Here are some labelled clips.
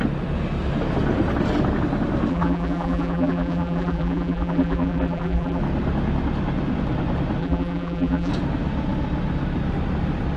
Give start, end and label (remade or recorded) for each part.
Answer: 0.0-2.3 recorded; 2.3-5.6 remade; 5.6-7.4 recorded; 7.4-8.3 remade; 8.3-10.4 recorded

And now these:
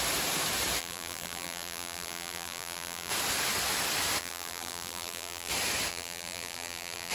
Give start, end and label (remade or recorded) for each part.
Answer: 0.0-0.8 recorded; 0.8-3.1 remade; 3.1-4.2 recorded; 4.2-5.5 remade; 5.5-5.9 recorded; 5.9-7.1 remade

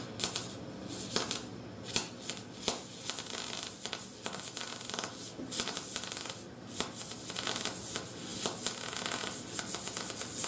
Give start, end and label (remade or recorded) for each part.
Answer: 0.0-10.5 recorded

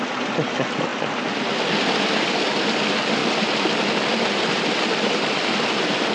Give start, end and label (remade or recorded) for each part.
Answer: 0.0-3.2 recorded; 3.2-5.5 remade; 5.5-6.1 recorded

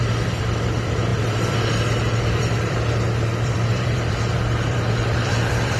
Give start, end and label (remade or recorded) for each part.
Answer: 0.0-5.8 remade

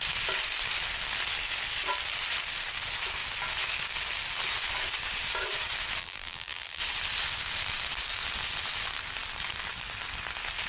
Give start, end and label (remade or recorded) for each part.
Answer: 0.0-6.0 recorded; 6.0-6.8 remade; 6.8-10.7 recorded

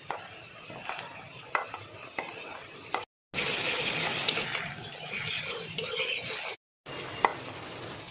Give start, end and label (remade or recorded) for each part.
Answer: 0.0-4.9 recorded; 4.9-6.1 remade; 6.1-7.3 recorded; 7.3-8.1 remade